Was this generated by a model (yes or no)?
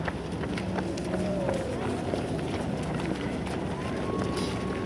no